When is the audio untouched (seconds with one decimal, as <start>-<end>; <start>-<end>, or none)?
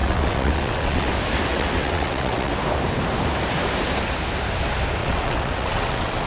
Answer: 1.1-1.5; 2.5-5.0